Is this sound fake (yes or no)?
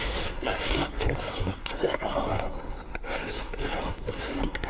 yes